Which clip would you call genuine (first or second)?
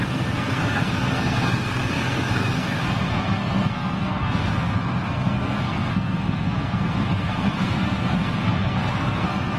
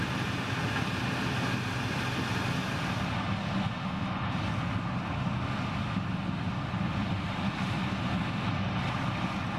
second